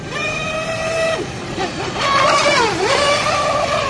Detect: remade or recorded recorded